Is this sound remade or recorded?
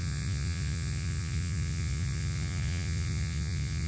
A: remade